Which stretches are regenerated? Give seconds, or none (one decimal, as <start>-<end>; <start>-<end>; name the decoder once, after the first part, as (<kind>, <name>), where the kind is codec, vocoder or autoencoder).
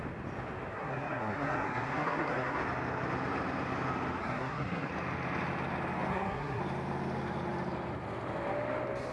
0.7-2.6 (codec, SNAC); 4.2-4.9; 6.1-6.6